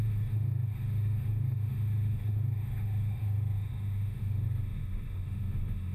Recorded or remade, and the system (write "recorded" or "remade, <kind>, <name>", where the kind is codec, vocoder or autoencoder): remade, autoencoder, DAC-VAE